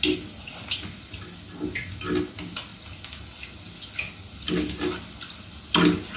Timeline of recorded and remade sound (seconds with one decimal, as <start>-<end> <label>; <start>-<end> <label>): 0.0-6.2 recorded